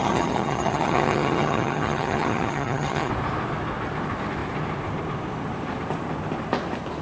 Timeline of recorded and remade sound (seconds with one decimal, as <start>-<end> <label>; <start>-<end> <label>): 0.0-3.1 remade; 3.1-7.0 recorded